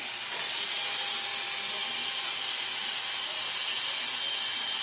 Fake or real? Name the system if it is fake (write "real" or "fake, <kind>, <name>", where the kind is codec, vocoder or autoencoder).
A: real